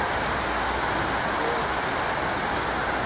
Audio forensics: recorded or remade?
recorded